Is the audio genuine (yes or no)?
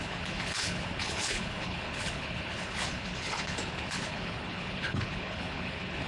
no